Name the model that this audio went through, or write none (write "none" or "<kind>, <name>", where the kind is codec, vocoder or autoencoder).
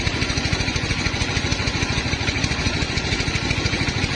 vocoder, Vocos